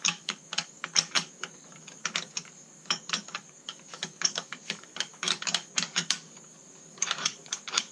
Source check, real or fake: fake